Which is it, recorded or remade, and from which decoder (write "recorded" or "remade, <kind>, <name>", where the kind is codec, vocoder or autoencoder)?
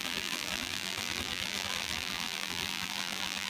remade, vocoder, BigVGAN v2